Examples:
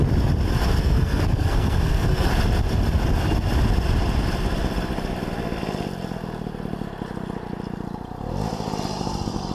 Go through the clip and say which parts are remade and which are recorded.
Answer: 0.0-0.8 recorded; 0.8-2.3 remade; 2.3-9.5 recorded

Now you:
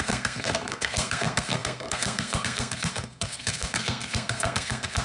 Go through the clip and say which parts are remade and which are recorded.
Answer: 0.0-5.0 remade